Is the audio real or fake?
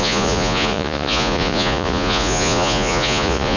fake